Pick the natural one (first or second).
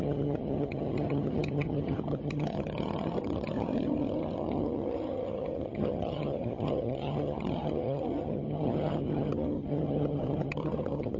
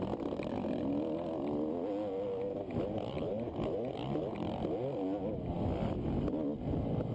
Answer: second